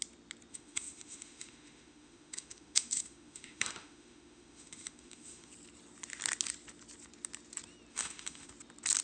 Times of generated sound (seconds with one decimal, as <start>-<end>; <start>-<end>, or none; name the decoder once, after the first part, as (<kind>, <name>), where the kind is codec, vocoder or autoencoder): 0.5-5.5 (autoencoder, DAC-VAE); 7.9-8.5